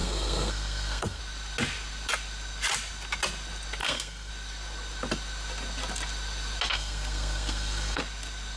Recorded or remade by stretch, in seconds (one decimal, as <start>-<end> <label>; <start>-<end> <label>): 0.0-1.2 remade; 1.2-3.8 recorded; 3.8-4.3 remade; 4.3-6.7 recorded; 6.7-8.0 remade; 8.0-8.6 recorded